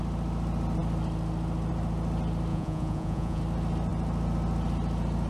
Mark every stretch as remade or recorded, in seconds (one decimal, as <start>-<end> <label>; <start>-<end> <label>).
0.0-2.5 recorded; 2.5-3.4 remade; 3.4-5.3 recorded